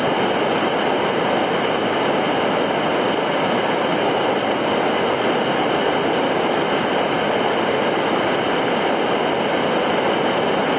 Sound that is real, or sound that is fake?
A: real